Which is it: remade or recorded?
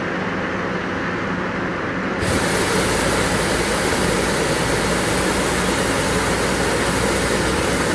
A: recorded